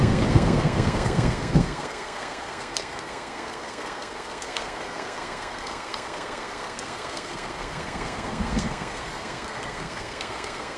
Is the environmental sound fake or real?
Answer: fake